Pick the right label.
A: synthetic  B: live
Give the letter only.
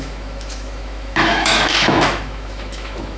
A